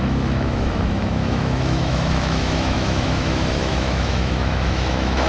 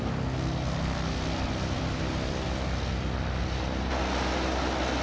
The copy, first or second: first